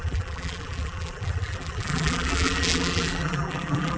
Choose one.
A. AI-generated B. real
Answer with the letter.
A